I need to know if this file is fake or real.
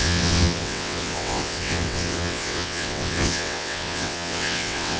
fake